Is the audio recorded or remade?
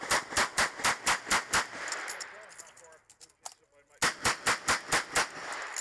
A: recorded